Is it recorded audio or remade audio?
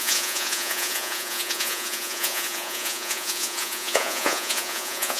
remade